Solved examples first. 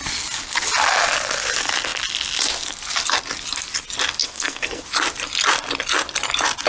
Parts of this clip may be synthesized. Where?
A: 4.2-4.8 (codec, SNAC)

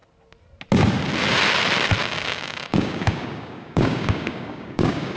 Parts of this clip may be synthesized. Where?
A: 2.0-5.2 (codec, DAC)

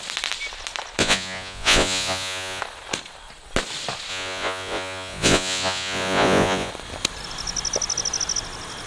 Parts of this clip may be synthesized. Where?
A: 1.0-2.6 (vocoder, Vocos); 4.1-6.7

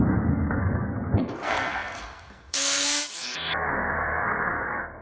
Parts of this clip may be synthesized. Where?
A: 0.0-5.0 (codec, SNAC)

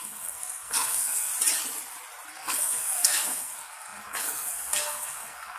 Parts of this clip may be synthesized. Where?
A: 0.0-1.3 (codec, SNAC); 2.3-5.6

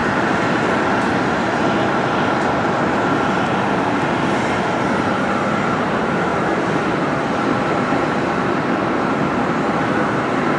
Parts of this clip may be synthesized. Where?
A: none